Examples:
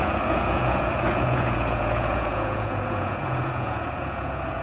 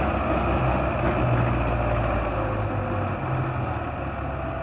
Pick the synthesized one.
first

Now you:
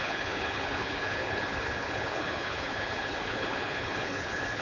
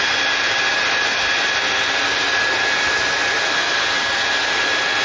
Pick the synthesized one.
first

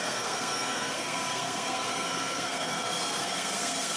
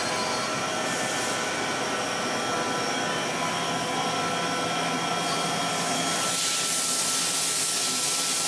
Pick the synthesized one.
first